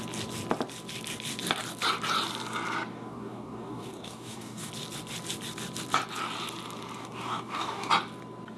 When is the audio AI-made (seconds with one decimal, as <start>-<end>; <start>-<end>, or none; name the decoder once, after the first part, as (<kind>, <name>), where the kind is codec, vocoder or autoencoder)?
2.9-4.7 (codec, DAC); 7.0-7.9